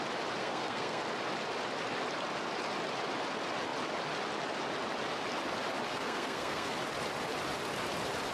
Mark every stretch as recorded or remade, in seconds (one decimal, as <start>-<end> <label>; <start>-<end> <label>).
0.0-0.4 recorded; 0.4-1.0 remade; 1.0-5.9 recorded; 5.9-6.7 remade; 6.7-8.3 recorded